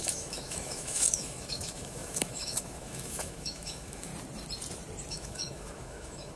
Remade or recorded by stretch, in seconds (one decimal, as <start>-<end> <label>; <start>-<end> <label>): 0.0-4.1 remade; 4.1-5.1 recorded; 5.1-6.4 remade